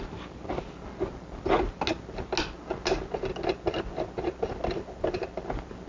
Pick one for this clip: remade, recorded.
recorded